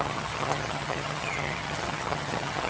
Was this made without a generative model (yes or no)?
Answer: no